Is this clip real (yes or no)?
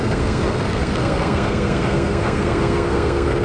no